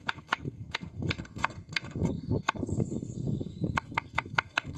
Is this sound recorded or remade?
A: remade